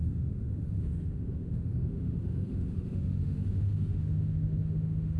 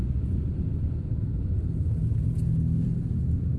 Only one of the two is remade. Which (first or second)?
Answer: first